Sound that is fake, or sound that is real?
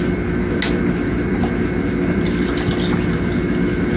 real